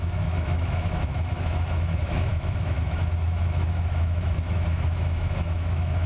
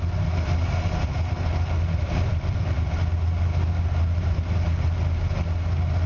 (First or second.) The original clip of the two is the second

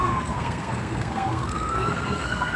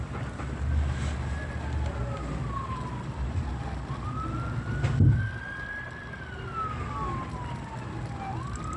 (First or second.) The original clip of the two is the second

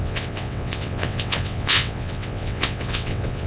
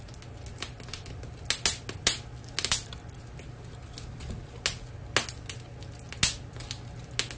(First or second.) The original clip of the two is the second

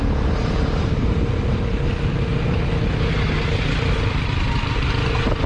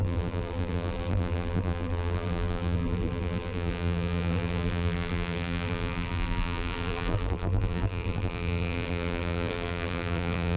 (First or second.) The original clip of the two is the first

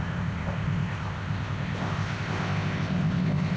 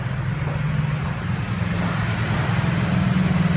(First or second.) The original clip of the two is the second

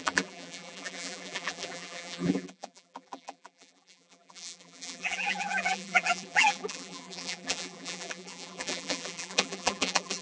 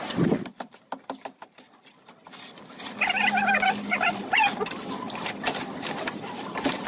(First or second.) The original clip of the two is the second